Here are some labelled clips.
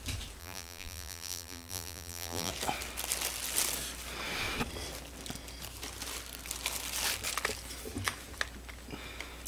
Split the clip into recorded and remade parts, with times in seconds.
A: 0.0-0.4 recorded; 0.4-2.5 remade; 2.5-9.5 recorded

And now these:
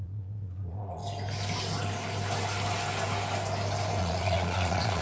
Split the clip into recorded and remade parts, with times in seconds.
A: 0.0-1.0 remade; 1.0-4.0 recorded; 4.0-5.0 remade

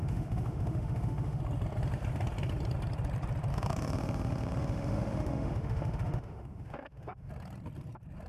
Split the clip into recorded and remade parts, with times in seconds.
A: 0.0-1.4 remade; 1.4-3.5 recorded; 3.5-7.3 remade; 7.3-8.3 recorded

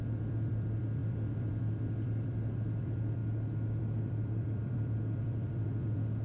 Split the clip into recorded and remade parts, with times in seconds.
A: 0.0-3.2 remade; 3.2-3.8 recorded; 3.8-6.2 remade

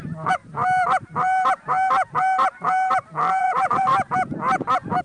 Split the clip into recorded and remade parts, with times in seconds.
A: 0.0-0.4 remade; 0.4-3.4 recorded; 3.4-3.9 remade; 3.9-5.0 recorded